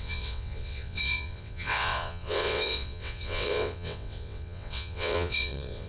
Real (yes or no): no